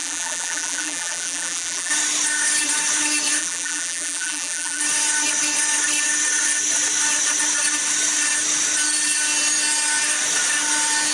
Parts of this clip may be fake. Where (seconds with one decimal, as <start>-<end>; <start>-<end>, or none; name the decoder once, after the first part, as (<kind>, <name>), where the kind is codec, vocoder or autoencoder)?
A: 0.0-1.9 (vocoder, BigVGAN v2); 3.4-4.8